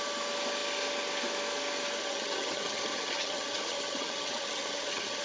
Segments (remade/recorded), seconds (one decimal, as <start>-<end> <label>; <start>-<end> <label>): 0.0-2.0 recorded; 2.0-5.2 remade